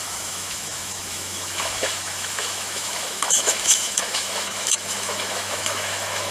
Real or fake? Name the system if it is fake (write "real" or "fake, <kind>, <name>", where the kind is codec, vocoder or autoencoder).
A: fake, autoencoder, DAC-VAE